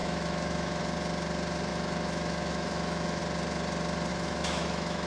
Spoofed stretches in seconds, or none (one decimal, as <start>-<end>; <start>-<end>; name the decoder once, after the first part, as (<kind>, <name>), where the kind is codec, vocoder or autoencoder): 0.0-0.8 (autoencoder, DAC-VAE); 1.7-3.2; 4.1-5.1